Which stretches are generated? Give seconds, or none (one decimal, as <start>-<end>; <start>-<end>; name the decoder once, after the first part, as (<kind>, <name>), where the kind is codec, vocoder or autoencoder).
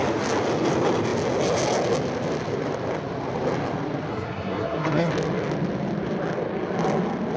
4.1-5.1 (codec, SNAC)